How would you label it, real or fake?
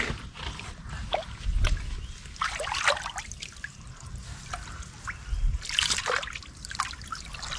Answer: real